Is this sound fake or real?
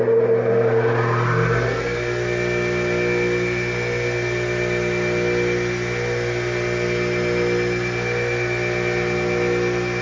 real